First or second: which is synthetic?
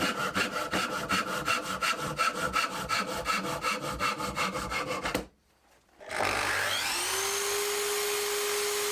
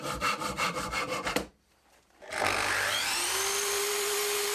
second